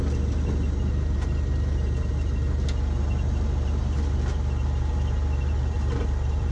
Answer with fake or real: real